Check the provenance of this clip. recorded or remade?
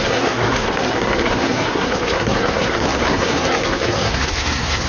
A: remade